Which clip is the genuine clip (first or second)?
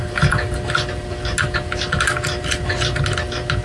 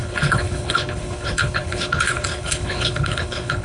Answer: first